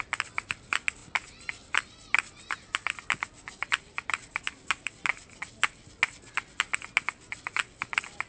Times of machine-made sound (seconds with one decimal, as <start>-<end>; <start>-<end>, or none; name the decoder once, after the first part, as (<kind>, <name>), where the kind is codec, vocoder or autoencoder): 1.0-5.5 (vocoder, BigVGAN v2)